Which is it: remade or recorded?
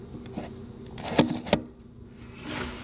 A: recorded